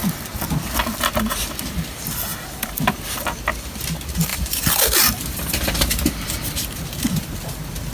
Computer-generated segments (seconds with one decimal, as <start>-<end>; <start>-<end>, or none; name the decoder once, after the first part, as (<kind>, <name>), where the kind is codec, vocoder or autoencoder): 2.3-2.9 (vocoder, BigVGAN v2); 4.3-7.3